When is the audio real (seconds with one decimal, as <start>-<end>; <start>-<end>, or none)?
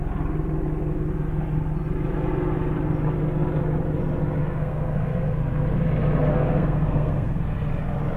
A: 0.0-4.4; 5.4-6.3; 7.4-8.2